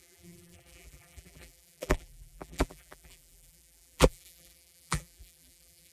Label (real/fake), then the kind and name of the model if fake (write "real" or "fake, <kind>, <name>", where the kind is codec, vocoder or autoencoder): fake, vocoder, BigVGAN v2